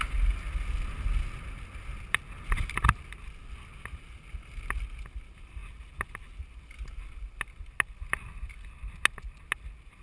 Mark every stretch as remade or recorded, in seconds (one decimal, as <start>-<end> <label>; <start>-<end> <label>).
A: 0.0-10.0 recorded